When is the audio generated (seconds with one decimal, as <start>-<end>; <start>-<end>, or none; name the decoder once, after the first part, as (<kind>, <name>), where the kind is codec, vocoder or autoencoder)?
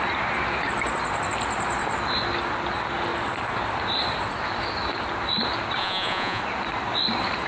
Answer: 5.8-6.4 (vocoder, Vocos)